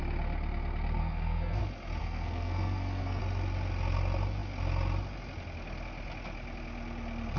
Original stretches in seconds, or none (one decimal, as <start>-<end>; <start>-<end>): 0.0-1.0; 1.6-2.0; 3.2-7.4